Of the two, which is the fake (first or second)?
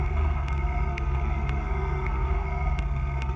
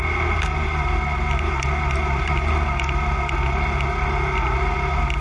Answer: first